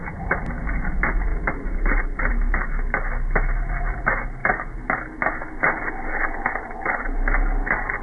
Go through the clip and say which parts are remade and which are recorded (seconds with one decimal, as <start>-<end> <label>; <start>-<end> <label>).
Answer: 0.0-8.0 recorded